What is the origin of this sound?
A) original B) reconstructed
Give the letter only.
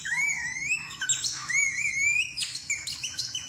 B